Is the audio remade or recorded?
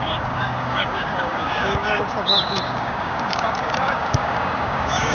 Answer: remade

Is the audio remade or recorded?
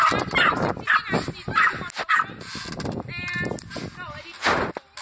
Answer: recorded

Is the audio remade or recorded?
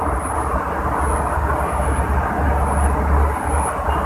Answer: recorded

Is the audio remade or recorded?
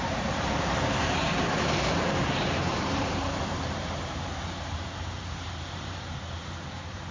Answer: remade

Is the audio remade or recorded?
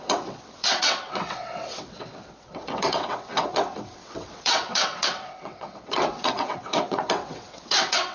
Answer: remade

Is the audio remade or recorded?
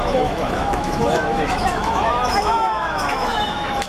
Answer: remade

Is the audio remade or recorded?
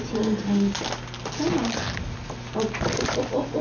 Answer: recorded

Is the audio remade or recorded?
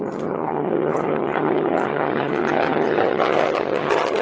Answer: remade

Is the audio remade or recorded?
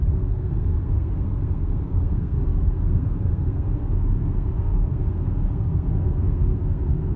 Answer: remade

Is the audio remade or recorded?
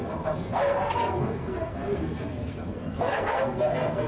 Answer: remade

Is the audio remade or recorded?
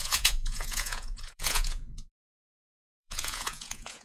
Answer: remade